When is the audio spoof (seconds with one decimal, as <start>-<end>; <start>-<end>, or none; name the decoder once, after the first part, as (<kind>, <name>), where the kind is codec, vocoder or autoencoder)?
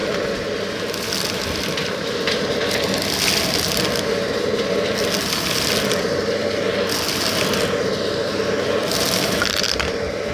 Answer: none